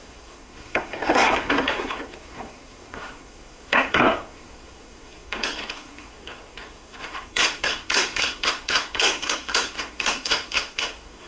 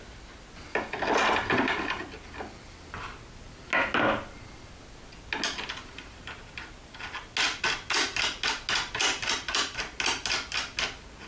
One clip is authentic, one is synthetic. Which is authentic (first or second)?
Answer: second